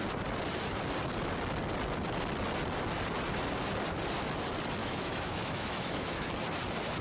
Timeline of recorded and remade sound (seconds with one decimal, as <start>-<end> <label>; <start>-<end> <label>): 0.0-4.8 recorded; 4.8-6.3 remade; 6.3-7.0 recorded